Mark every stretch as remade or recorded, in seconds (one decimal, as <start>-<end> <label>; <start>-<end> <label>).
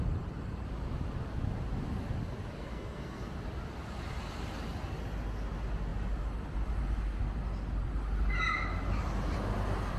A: 0.0-2.6 recorded; 2.6-3.3 remade; 3.3-10.0 recorded